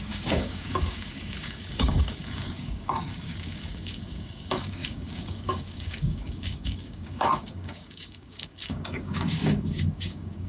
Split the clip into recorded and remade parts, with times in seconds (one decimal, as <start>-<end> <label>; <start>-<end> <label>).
0.0-10.5 remade